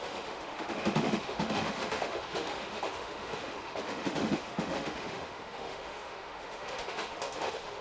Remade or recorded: remade